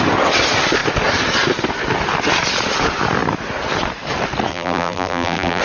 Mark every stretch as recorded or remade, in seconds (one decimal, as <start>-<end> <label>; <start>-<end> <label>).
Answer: 0.0-4.5 recorded; 4.5-5.6 remade